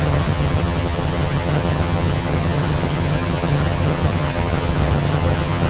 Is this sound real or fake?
fake